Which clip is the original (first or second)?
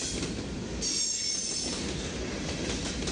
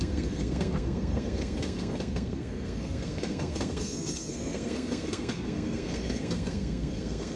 first